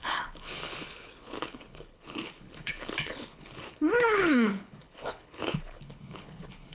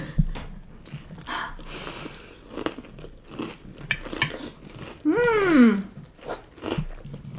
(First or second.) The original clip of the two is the second